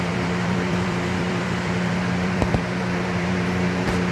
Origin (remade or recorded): remade